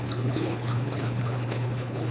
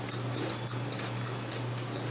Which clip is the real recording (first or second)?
second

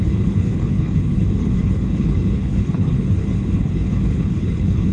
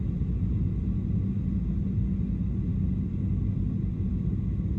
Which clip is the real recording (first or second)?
second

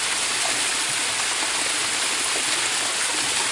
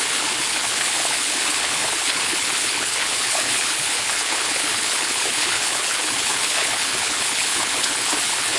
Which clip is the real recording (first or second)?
first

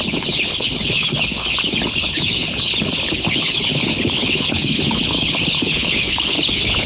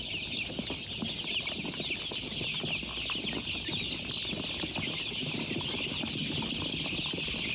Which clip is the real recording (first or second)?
second